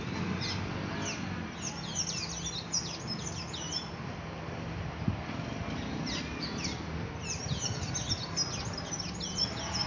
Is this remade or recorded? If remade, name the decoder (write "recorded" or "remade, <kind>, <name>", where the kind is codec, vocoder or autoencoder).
recorded